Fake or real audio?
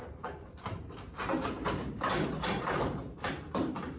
fake